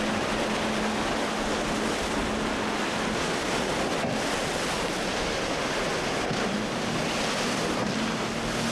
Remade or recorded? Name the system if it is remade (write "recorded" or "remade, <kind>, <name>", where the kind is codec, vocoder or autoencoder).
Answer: recorded